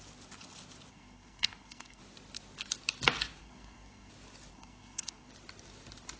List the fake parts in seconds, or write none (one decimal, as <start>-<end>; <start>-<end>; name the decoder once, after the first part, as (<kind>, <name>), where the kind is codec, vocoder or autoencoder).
0.9-2.0 (codec, SNAC); 3.4-4.1; 4.5-5.3